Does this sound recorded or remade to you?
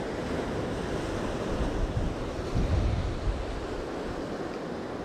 recorded